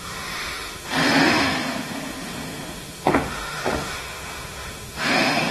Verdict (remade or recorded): remade